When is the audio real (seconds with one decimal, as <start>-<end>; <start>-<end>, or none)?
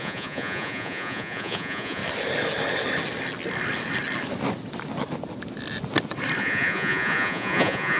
2.0-6.4